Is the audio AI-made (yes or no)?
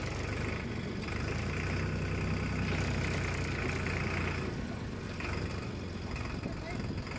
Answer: no